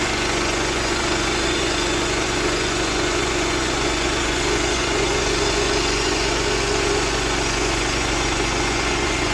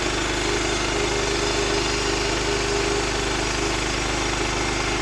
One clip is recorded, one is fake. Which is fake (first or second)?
first